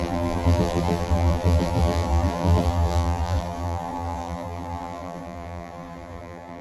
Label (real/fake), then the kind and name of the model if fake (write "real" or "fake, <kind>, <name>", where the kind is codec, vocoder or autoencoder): fake, vocoder, BigVGAN v2